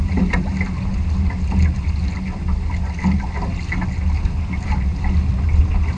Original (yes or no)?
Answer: yes